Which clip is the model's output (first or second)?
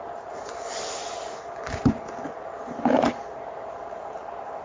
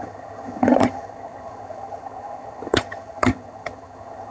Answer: second